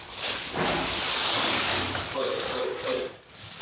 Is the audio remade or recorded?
remade